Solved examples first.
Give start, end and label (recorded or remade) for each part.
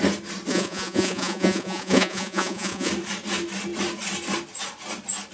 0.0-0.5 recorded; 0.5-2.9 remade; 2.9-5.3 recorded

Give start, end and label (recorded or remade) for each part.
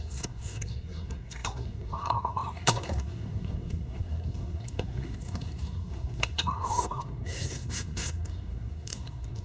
0.0-9.4 remade